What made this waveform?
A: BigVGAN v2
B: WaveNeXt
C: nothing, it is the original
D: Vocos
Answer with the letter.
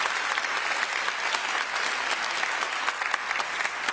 C